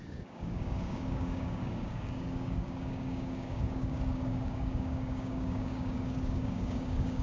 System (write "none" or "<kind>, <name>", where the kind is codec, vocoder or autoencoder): codec, DAC